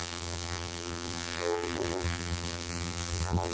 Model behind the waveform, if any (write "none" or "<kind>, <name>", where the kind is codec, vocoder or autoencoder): vocoder, BigVGAN v2